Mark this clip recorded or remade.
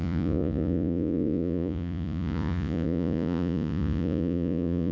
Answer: remade